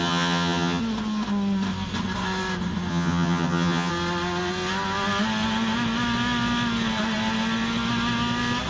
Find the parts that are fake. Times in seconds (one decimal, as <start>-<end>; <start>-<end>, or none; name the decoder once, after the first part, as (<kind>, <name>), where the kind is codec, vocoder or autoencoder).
0.0-0.8 (vocoder, HiFi-GAN); 2.9-3.9

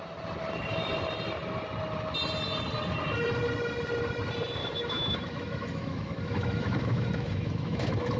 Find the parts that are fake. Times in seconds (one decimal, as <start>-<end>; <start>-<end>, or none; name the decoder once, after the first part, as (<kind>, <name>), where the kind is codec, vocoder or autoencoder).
4.6-8.2 (autoencoder, DAC-VAE)

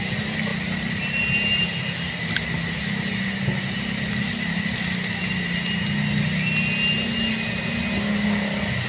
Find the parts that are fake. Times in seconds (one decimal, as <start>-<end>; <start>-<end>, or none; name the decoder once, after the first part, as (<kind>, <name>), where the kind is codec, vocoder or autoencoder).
none

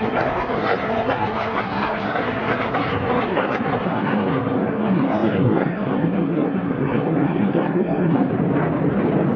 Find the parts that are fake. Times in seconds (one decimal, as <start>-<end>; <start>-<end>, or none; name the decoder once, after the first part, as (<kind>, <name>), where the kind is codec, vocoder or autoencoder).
0.0-8.3 (codec, SNAC)

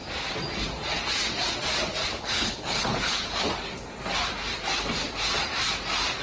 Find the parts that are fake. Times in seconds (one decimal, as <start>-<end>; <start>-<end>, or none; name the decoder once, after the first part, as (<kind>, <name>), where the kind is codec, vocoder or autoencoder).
2.0-3.4 (codec, HILCodec)

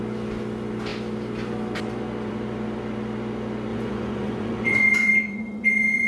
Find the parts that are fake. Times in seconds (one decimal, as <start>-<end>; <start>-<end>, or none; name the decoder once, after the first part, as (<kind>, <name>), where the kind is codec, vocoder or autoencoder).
3.7-6.1 (vocoder, Vocos)

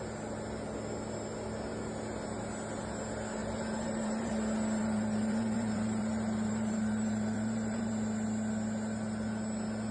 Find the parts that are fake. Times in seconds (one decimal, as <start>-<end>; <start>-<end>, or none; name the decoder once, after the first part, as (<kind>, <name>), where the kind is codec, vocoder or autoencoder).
3.4-4.3 (vocoder, BigVGAN v2); 4.8-7.9

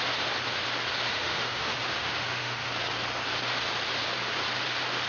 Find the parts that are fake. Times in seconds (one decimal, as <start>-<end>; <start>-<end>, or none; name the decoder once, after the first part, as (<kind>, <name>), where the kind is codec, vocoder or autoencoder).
1.1-2.7 (autoencoder, DAC-VAE)